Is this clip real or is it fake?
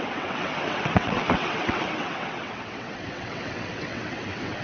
fake